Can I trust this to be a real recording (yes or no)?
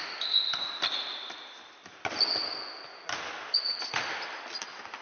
yes